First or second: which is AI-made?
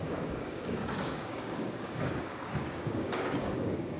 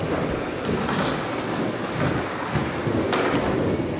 first